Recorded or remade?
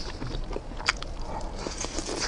recorded